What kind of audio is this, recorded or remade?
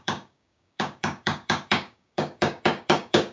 remade